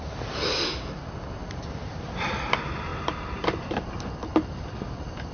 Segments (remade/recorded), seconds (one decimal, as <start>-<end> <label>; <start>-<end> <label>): 0.0-2.9 recorded; 2.9-4.0 remade; 4.0-5.3 recorded